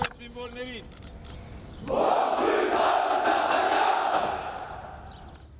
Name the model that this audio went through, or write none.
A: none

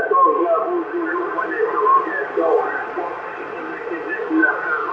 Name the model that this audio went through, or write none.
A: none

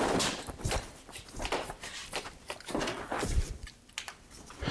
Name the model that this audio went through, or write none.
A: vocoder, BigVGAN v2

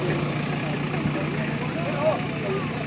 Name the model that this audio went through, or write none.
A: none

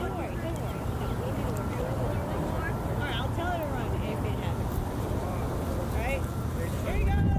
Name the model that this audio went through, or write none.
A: none